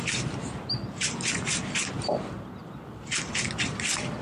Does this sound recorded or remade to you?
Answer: recorded